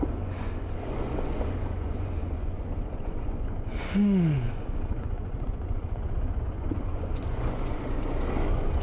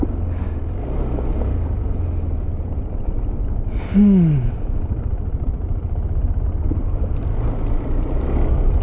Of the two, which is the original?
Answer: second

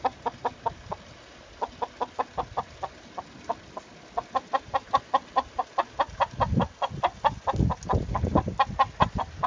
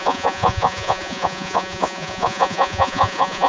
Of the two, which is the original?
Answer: first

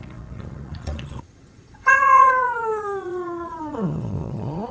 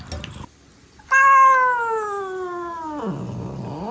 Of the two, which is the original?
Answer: second